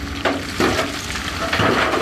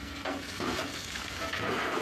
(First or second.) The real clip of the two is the first